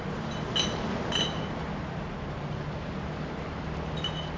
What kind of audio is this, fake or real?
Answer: real